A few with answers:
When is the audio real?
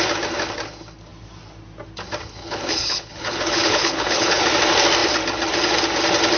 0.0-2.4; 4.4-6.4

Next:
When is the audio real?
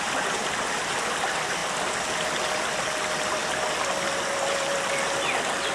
0.0-5.7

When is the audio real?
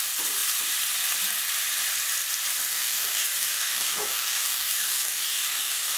0.0-2.7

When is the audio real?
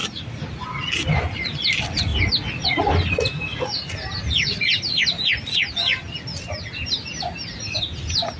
0.0-8.4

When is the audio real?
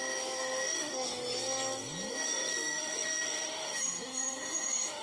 1.2-2.1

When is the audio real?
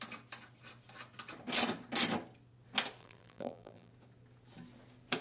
0.0-3.0; 3.9-5.2